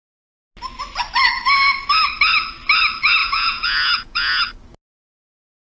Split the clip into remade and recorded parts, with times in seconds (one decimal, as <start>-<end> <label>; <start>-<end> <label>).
0.0-3.2 recorded; 3.2-4.4 remade; 4.4-5.7 recorded